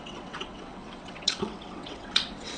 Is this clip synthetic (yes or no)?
yes